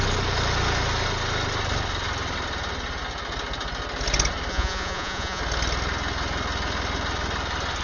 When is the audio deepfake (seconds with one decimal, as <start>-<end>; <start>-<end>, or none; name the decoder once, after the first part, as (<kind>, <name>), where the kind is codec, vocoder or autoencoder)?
4.5-5.4 (vocoder, Vocos)